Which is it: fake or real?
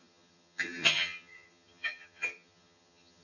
fake